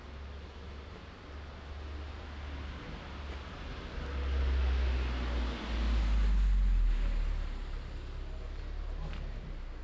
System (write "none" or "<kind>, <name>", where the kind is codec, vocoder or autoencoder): none